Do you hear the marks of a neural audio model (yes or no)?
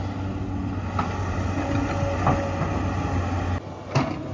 no